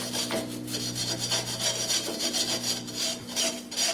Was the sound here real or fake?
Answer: real